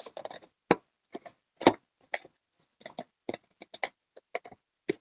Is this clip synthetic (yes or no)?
no